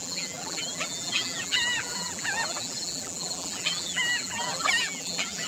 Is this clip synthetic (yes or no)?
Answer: yes